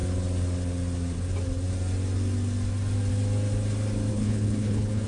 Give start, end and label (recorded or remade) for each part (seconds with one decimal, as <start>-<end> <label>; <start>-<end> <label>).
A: 0.0-4.1 recorded; 4.1-5.1 remade